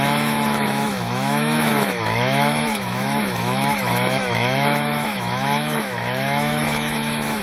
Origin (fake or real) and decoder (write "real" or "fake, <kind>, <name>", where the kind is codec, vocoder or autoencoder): fake, autoencoder, DAC-VAE